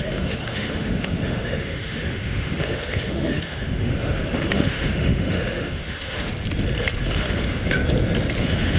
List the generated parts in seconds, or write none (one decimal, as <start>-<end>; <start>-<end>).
0.0-6.3; 7.2-7.8; 8.4-8.8

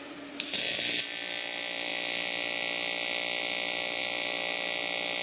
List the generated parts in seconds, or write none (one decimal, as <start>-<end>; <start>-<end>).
none